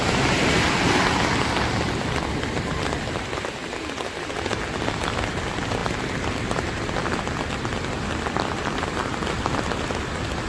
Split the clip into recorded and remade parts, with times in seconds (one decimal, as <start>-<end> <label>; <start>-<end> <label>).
0.0-10.5 recorded